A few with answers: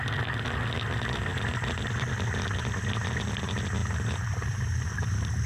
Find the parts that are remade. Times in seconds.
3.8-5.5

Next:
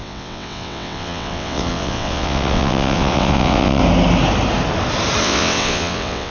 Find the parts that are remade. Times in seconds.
0.0-3.8; 5.2-6.3

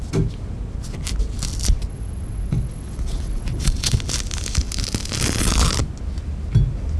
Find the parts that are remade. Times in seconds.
1.9-3.9

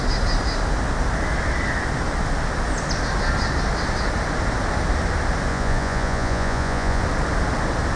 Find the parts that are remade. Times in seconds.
5.5-7.0

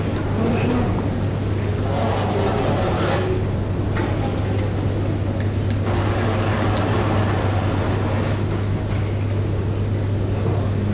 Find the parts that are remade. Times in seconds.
none